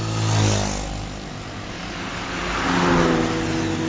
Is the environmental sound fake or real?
real